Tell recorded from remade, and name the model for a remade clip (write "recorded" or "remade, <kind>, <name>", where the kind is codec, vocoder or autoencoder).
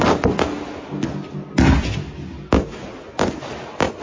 recorded